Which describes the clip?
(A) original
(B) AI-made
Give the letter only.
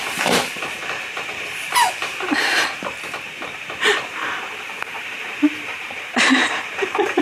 B